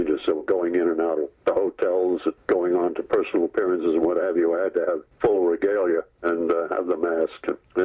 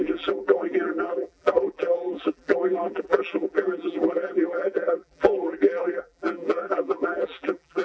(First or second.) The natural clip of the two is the first